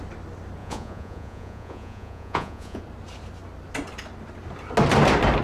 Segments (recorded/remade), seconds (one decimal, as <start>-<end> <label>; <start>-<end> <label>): 0.0-0.6 recorded; 0.6-2.8 remade; 2.8-5.4 recorded